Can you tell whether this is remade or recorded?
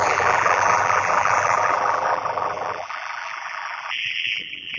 remade